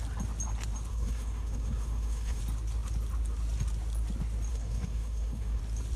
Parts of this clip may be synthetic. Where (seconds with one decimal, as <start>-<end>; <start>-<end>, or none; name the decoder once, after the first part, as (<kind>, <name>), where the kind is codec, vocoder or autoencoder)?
0.9-2.4 (codec, SNAC); 4.5-5.6